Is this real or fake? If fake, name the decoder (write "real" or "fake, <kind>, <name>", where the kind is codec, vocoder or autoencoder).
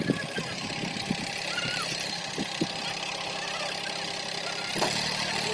real